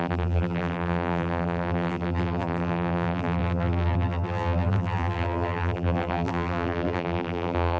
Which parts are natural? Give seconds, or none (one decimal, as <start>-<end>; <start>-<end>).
none